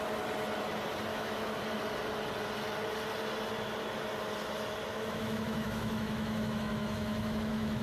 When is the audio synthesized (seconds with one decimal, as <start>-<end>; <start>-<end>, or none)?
1.1-1.6; 4.9-7.8